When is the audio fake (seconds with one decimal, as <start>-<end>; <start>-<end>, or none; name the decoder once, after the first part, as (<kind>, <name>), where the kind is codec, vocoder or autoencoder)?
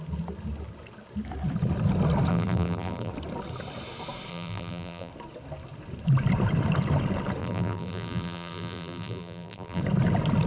2.3-3.1 (vocoder, BigVGAN v2); 4.3-5.1; 7.4-9.8